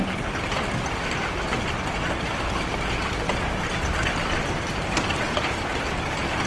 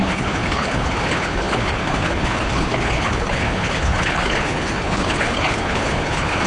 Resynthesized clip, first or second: second